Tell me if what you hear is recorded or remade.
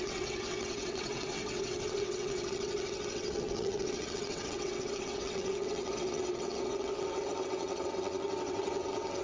remade